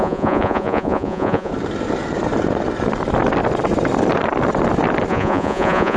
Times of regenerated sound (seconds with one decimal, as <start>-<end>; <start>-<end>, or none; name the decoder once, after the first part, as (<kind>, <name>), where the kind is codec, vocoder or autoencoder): 0.0-1.5 (vocoder, Vocos); 5.1-6.0